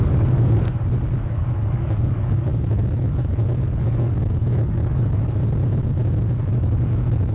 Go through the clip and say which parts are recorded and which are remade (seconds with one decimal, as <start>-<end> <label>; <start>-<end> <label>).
0.0-0.7 remade; 0.7-1.3 recorded; 1.3-5.4 remade; 5.4-6.4 recorded; 6.4-7.3 remade